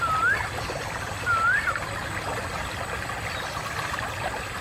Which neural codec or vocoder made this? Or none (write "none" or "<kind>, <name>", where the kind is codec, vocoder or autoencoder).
none